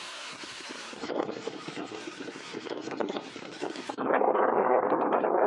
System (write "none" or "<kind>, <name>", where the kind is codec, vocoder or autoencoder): codec, SNAC